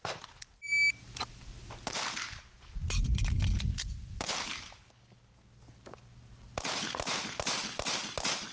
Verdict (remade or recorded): recorded